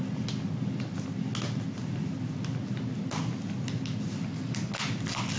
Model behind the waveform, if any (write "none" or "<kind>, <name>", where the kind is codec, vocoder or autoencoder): none